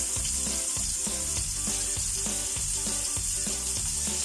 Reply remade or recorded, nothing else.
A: recorded